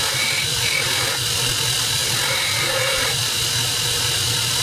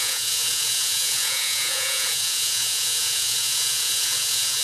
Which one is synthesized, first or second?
second